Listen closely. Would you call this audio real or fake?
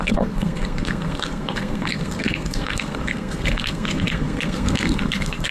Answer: fake